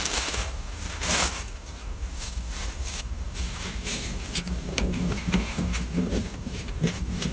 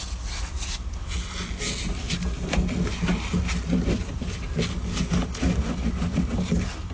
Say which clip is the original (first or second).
second